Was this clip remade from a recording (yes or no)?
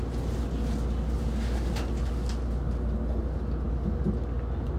no